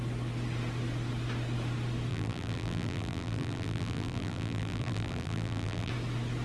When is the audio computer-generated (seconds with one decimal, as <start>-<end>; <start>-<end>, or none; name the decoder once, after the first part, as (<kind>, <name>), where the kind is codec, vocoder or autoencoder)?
2.1-5.9 (vocoder, BigVGAN v2)